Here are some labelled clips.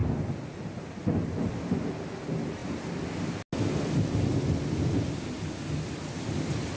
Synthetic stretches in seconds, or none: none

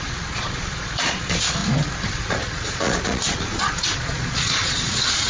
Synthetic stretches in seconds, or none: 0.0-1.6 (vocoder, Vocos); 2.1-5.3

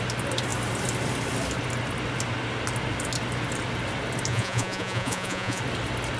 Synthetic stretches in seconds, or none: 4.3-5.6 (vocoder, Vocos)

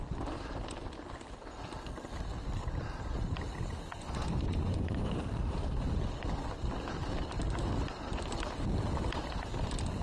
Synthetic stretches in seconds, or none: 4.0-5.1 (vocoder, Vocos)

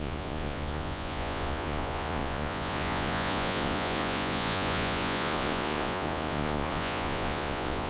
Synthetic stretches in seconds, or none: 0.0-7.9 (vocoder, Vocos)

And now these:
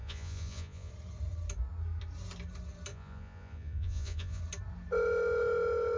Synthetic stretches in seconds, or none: 0.0-0.9 (vocoder, Vocos); 2.9-4.4